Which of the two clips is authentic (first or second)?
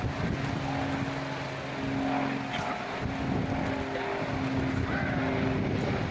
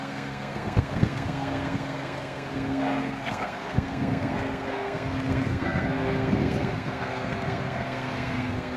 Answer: first